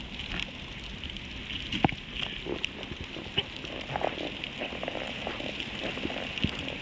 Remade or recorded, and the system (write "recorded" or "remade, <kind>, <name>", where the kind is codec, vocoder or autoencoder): recorded